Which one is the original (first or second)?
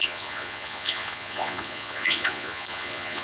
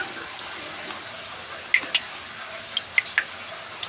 second